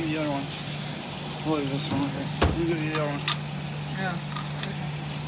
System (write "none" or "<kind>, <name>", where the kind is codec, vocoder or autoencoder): none